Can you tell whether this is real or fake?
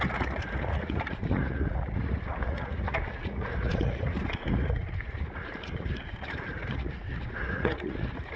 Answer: fake